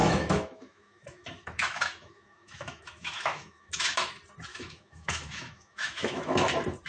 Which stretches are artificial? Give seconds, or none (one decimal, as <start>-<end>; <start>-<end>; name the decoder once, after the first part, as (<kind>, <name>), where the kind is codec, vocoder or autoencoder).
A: 0.0-4.1 (autoencoder, DAC-VAE); 4.5-6.5